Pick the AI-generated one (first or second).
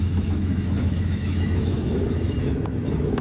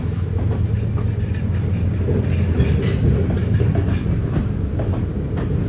first